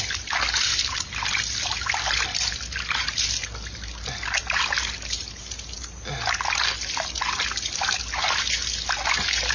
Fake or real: real